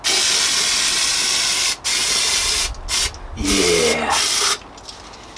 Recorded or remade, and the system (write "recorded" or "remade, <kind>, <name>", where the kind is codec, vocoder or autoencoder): recorded